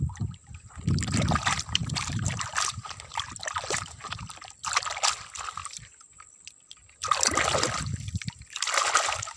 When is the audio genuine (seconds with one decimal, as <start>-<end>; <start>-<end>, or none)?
0.0-0.4; 1.4-1.8; 4.2-5.6; 6.2-9.4